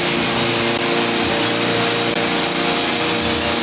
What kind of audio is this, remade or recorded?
recorded